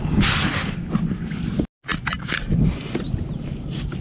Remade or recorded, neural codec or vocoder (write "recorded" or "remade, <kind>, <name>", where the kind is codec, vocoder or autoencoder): recorded